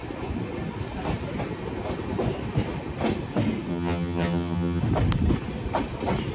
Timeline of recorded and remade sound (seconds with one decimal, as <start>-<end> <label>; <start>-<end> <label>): 0.0-3.7 recorded; 3.7-4.8 remade; 4.8-6.3 recorded